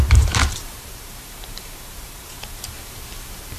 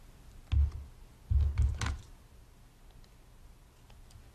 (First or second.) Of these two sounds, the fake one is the first